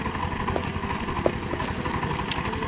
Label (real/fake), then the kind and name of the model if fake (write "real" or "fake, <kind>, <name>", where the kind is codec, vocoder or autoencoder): real